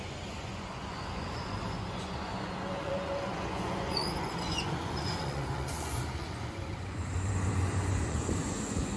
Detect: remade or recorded remade